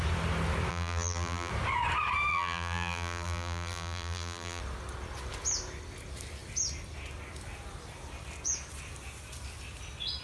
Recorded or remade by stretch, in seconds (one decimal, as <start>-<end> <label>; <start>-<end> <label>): 0.0-0.7 recorded; 0.7-1.5 remade; 1.5-2.3 recorded; 2.3-4.6 remade; 4.6-10.2 recorded